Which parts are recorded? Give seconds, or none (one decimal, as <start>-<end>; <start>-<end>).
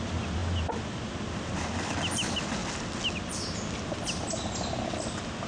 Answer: 0.0-5.5